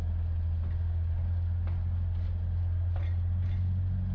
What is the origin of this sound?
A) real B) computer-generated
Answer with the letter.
A